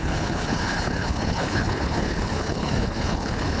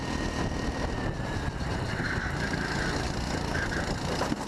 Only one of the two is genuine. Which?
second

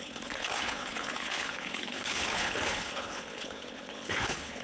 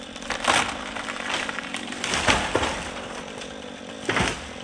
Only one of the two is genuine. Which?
second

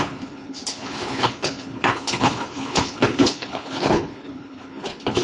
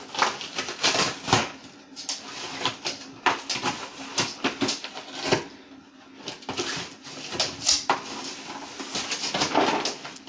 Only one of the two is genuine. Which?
second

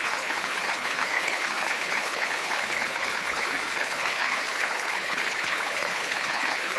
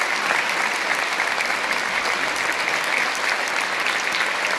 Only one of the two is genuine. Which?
second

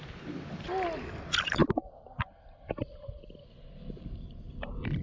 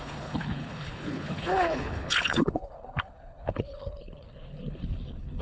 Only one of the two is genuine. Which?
first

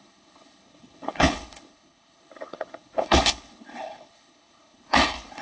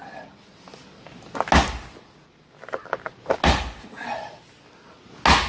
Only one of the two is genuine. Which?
second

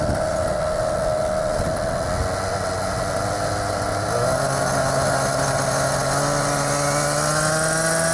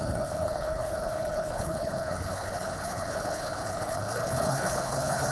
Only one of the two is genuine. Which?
first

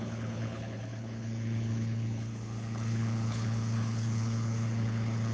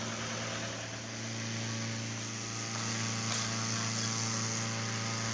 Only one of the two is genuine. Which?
second